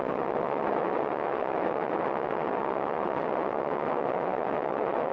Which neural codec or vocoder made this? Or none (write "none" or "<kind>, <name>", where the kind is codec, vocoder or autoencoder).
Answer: vocoder, WaveNeXt